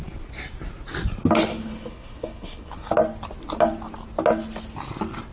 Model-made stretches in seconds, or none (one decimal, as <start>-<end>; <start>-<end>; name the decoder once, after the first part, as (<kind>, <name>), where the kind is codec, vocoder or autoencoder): 1.5-2.9 (codec, HILCodec)